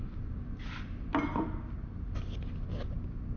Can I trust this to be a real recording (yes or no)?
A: yes